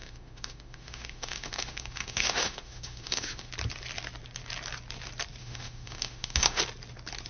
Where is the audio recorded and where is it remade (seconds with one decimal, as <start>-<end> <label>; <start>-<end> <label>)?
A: 0.0-3.5 remade; 3.5-5.4 recorded; 5.4-6.6 remade; 6.6-7.3 recorded